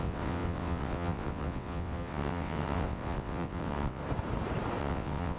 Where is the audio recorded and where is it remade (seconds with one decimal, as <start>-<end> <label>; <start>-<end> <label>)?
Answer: 0.0-4.0 remade; 4.0-4.8 recorded; 4.8-5.4 remade